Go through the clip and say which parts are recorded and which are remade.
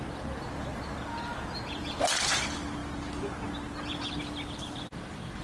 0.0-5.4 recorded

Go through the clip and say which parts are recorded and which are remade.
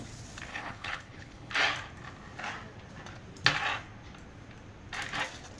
0.0-0.5 recorded; 0.5-1.5 remade; 1.5-5.6 recorded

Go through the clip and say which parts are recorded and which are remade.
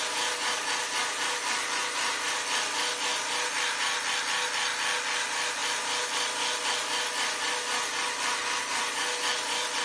0.0-9.8 recorded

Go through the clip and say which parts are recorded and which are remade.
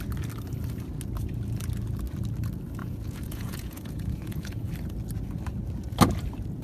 0.0-2.8 recorded; 2.8-4.7 remade; 4.7-6.6 recorded